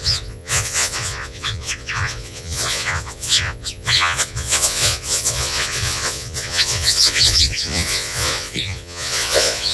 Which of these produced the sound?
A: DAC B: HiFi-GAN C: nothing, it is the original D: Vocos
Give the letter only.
D